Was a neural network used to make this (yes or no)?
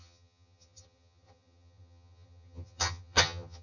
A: yes